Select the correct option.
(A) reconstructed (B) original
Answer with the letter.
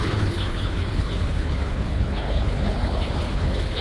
A